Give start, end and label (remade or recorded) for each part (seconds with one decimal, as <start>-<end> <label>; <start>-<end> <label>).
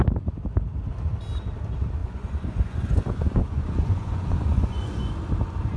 0.0-2.0 recorded; 2.0-5.1 remade; 5.1-5.8 recorded